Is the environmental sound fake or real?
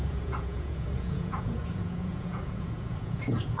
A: fake